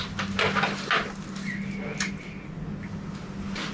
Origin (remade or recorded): recorded